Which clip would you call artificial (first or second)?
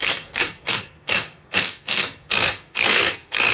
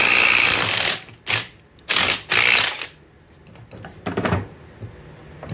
first